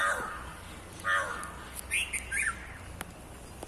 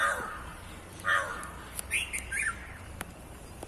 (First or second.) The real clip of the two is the first